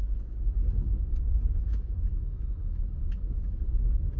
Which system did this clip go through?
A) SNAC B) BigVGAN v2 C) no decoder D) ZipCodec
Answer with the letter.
C